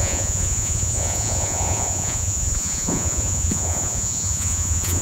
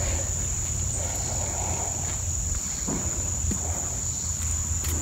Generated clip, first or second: first